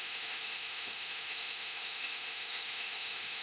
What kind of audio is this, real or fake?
fake